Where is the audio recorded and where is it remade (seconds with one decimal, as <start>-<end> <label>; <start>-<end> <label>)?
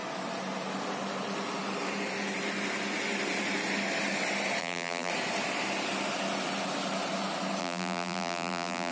0.0-4.6 recorded; 4.6-5.1 remade; 5.1-7.6 recorded; 7.6-8.9 remade